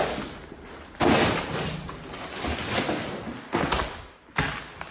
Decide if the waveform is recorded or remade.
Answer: recorded